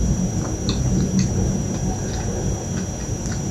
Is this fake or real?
real